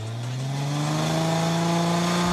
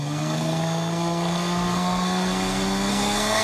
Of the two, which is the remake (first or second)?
second